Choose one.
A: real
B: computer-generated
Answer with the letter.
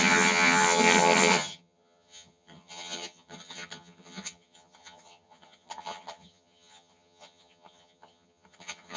B